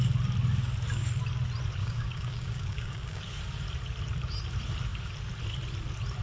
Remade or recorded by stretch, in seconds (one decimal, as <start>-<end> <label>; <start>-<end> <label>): 0.0-1.8 recorded; 1.8-3.2 remade; 3.2-6.2 recorded